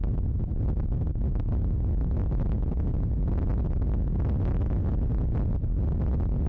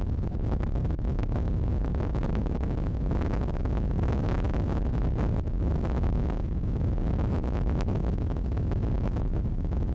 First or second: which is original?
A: first